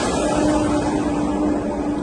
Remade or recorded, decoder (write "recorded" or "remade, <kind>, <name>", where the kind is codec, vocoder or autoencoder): recorded